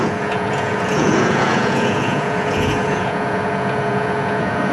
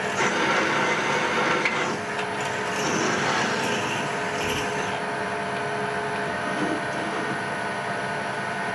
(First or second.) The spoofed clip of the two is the first